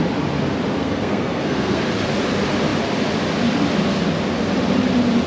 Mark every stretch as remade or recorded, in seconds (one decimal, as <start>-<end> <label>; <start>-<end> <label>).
0.0-0.8 recorded; 0.8-1.9 remade; 1.9-5.3 recorded